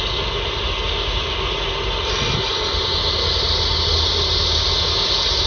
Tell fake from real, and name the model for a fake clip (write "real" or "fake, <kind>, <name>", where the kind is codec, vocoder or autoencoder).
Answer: real